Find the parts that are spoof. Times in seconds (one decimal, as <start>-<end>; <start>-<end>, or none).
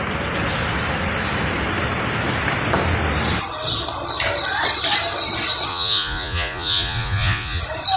5.7-7.6